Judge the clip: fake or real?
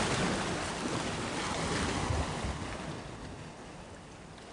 real